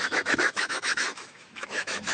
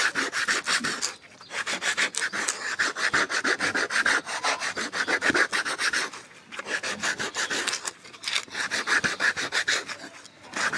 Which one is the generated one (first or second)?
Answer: first